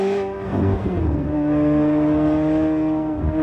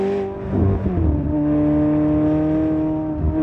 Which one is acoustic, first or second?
second